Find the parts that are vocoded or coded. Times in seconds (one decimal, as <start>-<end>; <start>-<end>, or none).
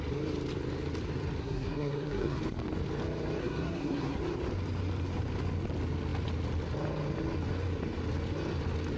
1.4-2.4; 3.4-4.2